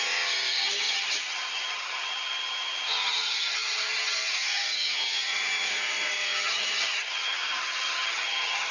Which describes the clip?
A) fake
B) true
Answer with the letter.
A